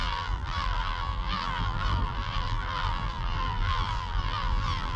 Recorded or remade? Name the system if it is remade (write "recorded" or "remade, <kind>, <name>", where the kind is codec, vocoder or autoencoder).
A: remade, vocoder, BigVGAN v2